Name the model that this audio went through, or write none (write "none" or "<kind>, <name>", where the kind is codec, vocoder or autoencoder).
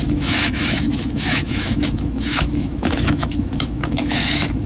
autoencoder, DAC-VAE